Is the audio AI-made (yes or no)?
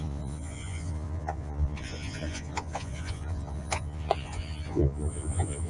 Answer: yes